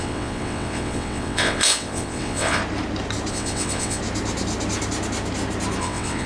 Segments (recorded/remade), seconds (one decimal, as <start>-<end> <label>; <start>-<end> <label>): 0.0-2.6 remade; 2.6-3.3 recorded; 3.3-4.0 remade; 4.0-5.8 recorded; 5.8-6.3 remade